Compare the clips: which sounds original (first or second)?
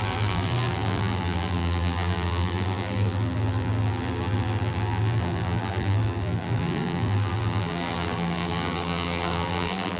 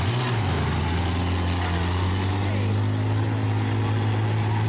second